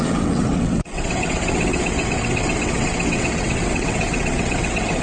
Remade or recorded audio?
remade